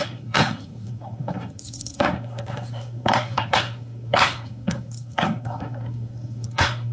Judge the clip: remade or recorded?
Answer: remade